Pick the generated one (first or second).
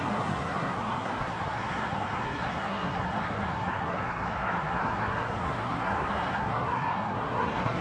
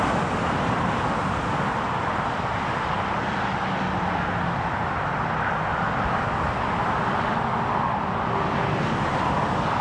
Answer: first